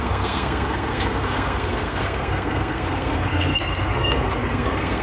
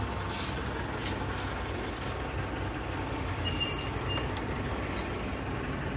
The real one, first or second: second